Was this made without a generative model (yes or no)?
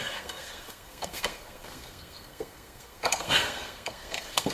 no